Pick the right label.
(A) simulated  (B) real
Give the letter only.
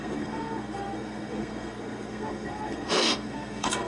A